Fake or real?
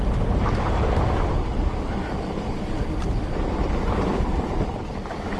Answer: real